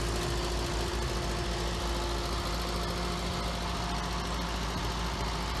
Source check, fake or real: real